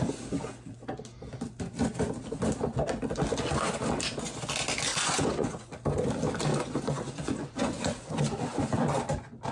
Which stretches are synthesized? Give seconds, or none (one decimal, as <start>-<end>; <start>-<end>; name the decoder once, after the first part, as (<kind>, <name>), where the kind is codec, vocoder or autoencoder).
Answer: 4.9-5.7 (vocoder, Vocos); 6.5-8.1